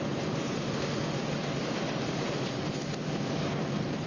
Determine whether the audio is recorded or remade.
recorded